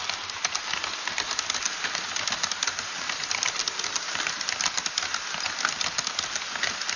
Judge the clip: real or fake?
real